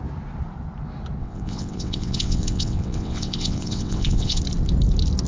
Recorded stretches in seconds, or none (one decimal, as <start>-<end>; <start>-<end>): 0.0-1.2; 4.4-5.3